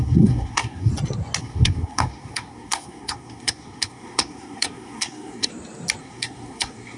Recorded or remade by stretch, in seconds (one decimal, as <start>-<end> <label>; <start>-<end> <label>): 0.0-0.9 remade; 0.9-1.4 recorded; 1.4-5.5 remade; 5.5-6.0 recorded; 6.0-7.0 remade